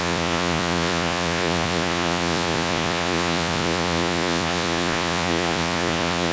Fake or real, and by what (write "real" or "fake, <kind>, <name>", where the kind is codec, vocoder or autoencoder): fake, vocoder, Vocos